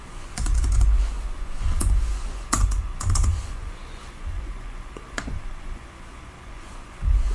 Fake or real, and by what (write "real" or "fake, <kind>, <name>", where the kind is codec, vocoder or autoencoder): fake, vocoder, Vocos